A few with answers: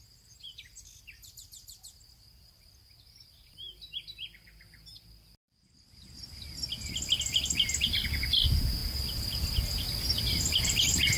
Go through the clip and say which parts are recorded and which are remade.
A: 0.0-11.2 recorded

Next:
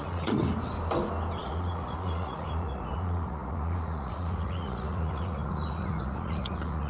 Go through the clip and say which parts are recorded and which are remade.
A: 0.0-0.4 remade; 0.4-1.4 recorded; 1.4-6.9 remade

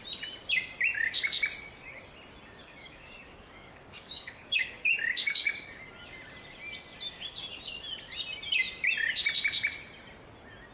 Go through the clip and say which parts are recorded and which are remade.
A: 0.0-2.6 recorded; 2.6-5.7 remade; 5.7-10.7 recorded

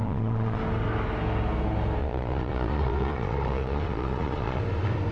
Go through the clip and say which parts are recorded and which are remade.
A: 0.0-0.6 remade; 0.6-2.0 recorded; 2.0-4.6 remade; 4.6-5.1 recorded

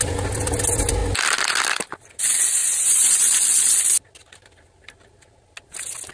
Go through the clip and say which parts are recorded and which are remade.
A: 0.0-2.6 recorded; 2.6-3.1 remade; 3.1-6.1 recorded

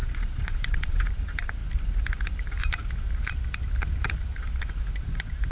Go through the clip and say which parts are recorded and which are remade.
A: 0.0-1.0 remade; 1.0-5.5 recorded

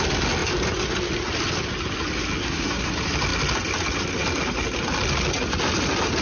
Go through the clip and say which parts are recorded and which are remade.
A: 0.0-2.4 recorded; 2.4-2.9 remade; 2.9-6.2 recorded

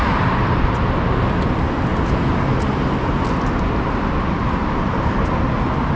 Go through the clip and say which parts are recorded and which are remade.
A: 0.0-6.0 recorded